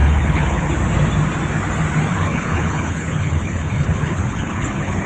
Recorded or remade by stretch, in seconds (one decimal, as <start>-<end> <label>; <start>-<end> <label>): 0.0-0.7 remade; 0.7-2.1 recorded; 2.1-5.1 remade